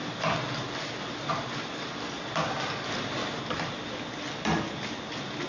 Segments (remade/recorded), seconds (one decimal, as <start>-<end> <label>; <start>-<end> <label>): 0.0-5.5 recorded